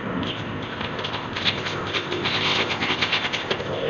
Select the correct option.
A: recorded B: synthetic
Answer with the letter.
B